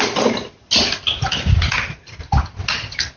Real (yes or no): yes